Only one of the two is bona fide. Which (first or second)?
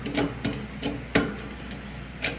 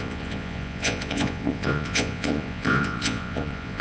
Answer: first